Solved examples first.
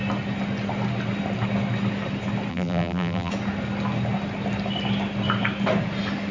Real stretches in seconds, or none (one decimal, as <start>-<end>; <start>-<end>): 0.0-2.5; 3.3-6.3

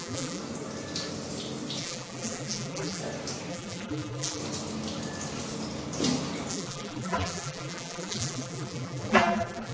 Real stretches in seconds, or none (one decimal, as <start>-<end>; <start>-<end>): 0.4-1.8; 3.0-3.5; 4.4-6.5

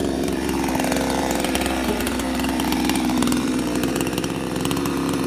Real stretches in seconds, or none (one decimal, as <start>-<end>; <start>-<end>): 0.7-1.2